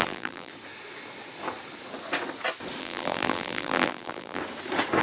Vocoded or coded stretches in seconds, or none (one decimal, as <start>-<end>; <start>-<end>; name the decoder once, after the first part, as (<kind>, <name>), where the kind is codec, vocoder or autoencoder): 0.0-0.5 (vocoder, BigVGAN v2); 2.8-4.4